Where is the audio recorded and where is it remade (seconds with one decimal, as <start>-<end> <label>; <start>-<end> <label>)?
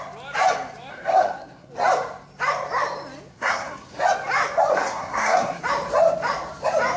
0.0-0.9 recorded; 0.9-1.7 remade; 1.7-3.3 recorded; 3.3-4.0 remade; 4.0-4.7 recorded; 4.7-5.6 remade; 5.6-7.0 recorded